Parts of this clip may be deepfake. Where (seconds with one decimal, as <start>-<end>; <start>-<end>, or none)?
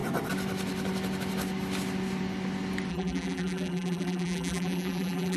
2.9-5.4